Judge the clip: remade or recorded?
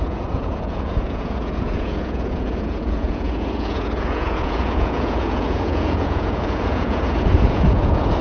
remade